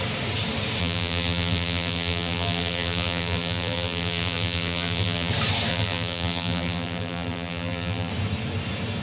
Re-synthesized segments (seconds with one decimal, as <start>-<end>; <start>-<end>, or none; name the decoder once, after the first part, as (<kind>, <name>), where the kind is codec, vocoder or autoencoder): 0.8-5.3 (vocoder, BigVGAN v2); 5.7-8.1